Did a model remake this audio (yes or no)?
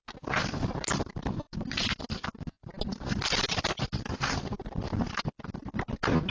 no